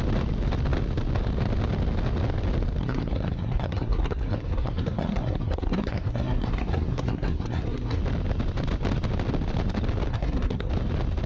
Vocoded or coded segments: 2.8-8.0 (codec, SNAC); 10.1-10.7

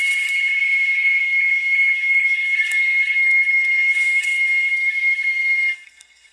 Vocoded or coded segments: 0.0-6.3 (codec, SNAC)

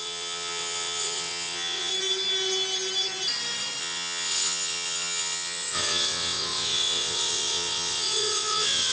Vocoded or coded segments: 0.0-1.9 (vocoder, WaveNeXt); 3.8-8.9

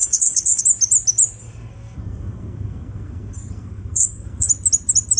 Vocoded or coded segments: 0.0-0.6 (codec, SNAC); 1.4-4.5

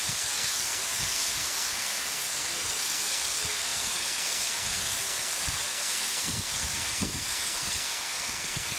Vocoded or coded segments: 0.0-8.8 (codec, SNAC)

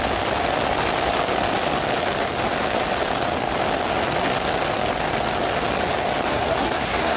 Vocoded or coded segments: 6.3-7.2 (codec, SNAC)